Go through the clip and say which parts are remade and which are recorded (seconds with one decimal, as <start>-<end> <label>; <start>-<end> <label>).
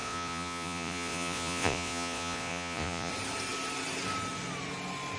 0.0-3.1 remade; 3.1-5.2 recorded